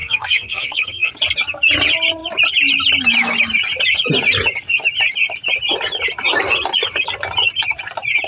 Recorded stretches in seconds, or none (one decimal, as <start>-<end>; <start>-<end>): 1.1-8.3